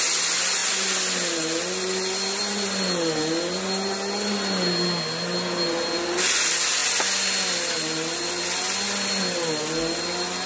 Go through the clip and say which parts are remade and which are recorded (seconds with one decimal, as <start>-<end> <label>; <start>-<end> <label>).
0.0-10.5 recorded